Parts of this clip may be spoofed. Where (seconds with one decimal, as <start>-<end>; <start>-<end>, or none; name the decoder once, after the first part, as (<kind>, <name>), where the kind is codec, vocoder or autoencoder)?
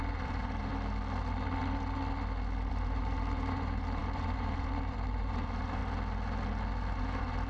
0.0-0.7 (vocoder, BigVGAN v2); 2.7-5.8; 7.0-7.5